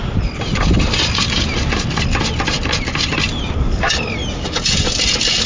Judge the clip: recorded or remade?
recorded